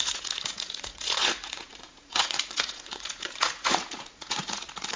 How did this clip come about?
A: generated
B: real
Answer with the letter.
A